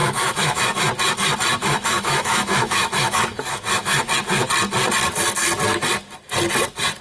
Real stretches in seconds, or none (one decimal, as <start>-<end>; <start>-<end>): 0.6-1.6; 4.1-7.0